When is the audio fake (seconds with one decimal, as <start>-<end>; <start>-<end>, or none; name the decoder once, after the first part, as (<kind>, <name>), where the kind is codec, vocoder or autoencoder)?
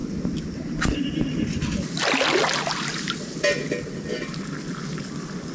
none